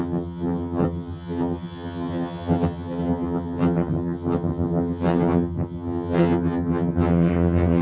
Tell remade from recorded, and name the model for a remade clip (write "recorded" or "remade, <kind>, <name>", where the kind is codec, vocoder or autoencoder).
remade, vocoder, HiFi-GAN